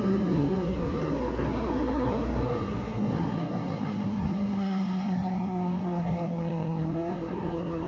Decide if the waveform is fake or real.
fake